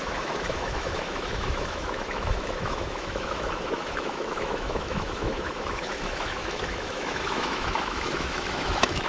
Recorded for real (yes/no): no